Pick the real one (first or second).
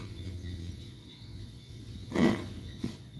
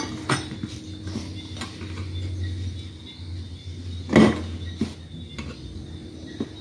second